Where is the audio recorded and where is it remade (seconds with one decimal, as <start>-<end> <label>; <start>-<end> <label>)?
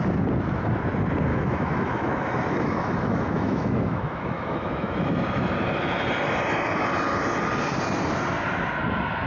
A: 0.0-1.3 recorded; 1.3-5.5 remade; 5.5-9.3 recorded